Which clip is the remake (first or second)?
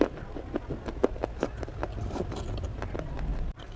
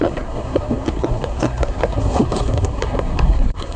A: second